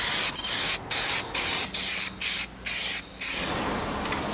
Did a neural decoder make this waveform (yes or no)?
no